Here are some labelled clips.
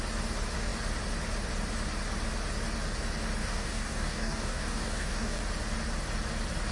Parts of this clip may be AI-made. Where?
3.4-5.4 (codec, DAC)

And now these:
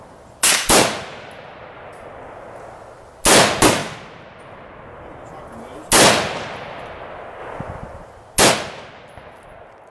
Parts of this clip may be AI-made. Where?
none